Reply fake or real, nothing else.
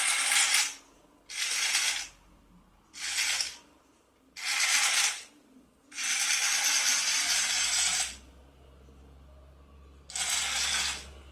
real